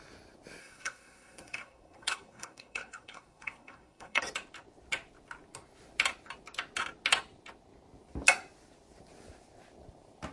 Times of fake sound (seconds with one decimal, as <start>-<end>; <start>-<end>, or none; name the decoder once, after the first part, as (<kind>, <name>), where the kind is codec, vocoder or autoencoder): 0.6-4.2 (codec, SNAC)